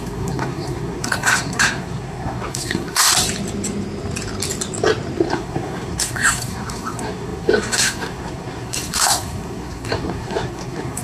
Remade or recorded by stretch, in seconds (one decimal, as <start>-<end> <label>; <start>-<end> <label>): 0.0-3.1 remade; 3.1-5.3 recorded; 5.3-11.0 remade

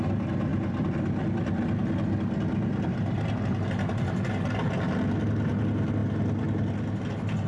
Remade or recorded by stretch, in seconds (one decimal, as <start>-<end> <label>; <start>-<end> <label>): 0.0-7.5 recorded

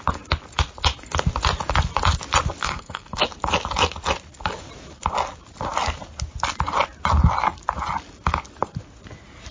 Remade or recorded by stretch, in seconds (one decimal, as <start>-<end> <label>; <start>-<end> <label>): 0.0-2.6 recorded; 2.6-3.2 remade; 3.2-9.5 recorded

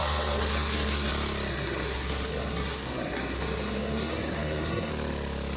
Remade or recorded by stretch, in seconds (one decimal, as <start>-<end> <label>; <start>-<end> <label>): 0.0-1.1 remade; 1.1-1.5 recorded; 1.5-4.9 remade; 4.9-5.6 recorded

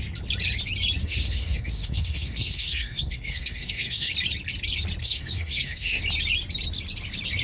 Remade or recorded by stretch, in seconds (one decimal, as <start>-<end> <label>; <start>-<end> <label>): 0.0-1.0 recorded; 1.0-4.1 remade; 4.1-5.0 recorded; 5.0-6.0 remade; 6.0-7.4 recorded

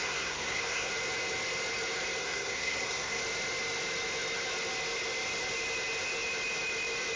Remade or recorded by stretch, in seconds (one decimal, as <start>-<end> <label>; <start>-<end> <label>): 0.0-0.9 remade; 0.9-2.2 recorded; 2.2-3.2 remade; 3.2-7.2 recorded